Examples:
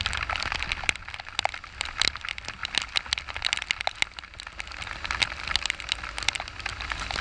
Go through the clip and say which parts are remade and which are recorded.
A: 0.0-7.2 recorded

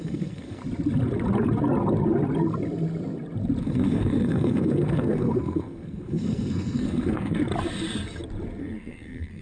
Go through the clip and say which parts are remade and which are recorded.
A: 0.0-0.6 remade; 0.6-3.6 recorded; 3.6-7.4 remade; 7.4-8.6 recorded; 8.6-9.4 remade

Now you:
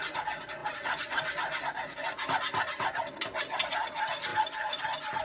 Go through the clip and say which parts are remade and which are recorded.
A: 0.0-5.2 recorded